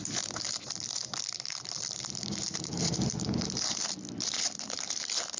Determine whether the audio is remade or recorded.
remade